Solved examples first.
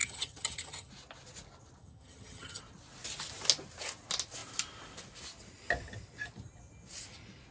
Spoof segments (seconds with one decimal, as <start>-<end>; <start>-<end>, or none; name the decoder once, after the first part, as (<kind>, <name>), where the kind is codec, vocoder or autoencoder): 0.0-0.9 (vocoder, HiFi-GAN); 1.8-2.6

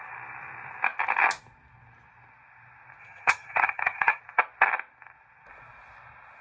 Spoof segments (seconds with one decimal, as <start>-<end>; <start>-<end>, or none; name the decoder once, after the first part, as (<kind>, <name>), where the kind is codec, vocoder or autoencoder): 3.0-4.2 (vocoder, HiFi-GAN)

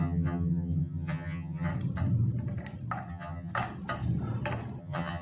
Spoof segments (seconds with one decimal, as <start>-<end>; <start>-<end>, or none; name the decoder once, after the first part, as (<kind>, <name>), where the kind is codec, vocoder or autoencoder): 0.0-1.7 (vocoder, HiFi-GAN); 3.1-3.5; 4.8-5.2

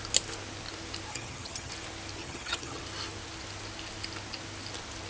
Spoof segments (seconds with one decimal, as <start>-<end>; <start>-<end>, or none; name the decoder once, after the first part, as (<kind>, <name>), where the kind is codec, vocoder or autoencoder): 1.1-1.7 (vocoder, HiFi-GAN); 2.2-2.8

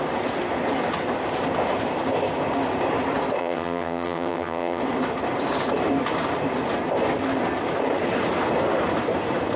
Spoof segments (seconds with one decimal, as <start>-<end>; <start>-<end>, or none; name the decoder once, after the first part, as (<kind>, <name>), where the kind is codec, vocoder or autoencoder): 3.4-4.8 (vocoder, HiFi-GAN)